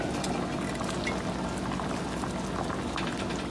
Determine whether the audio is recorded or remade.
recorded